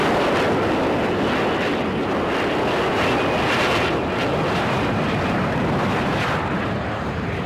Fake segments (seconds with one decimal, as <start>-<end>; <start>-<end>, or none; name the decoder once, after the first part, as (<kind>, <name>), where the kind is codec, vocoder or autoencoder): 4.5-7.5 (vocoder, BigVGAN v2)